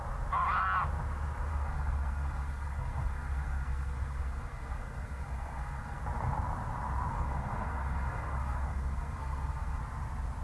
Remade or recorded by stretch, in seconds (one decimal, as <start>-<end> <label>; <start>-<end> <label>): 0.0-1.5 recorded; 1.5-6.0 remade; 6.0-7.1 recorded; 7.1-9.8 remade; 9.8-10.4 recorded